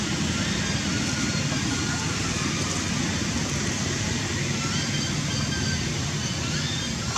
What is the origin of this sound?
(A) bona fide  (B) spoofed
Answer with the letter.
A